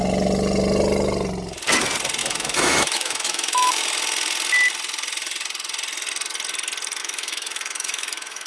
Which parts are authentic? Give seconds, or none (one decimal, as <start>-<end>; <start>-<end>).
0.0-2.2; 3.8-7.0